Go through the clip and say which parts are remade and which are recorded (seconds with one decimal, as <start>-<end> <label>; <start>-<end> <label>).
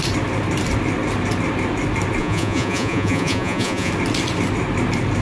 0.0-2.2 recorded; 2.2-3.9 remade; 3.9-5.2 recorded